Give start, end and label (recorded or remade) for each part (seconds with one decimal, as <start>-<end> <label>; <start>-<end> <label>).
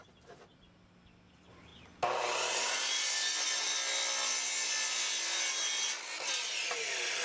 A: 0.0-7.2 recorded